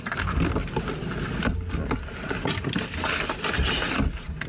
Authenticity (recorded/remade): recorded